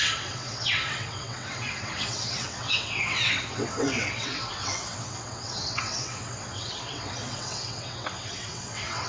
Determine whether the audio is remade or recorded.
remade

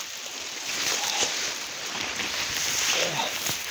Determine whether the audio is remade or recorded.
recorded